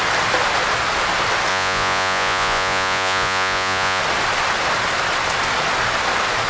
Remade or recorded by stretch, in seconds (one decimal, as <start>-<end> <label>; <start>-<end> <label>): 0.0-1.5 recorded; 1.5-4.0 remade; 4.0-6.5 recorded